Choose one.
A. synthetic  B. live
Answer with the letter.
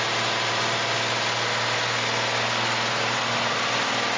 B